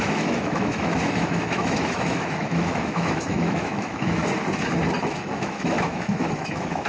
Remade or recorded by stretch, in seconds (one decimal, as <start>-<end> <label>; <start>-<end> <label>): 0.0-4.2 remade; 4.2-5.0 recorded; 5.0-6.9 remade